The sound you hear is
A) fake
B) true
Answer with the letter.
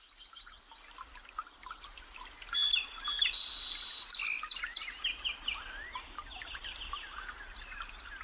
B